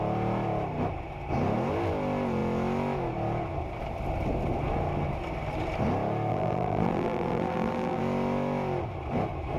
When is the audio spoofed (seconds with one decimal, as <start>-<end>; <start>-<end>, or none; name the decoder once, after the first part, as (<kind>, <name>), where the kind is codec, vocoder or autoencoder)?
6.3-8.0 (vocoder, BigVGAN v2)